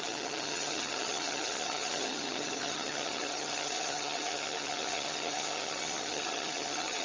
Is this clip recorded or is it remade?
remade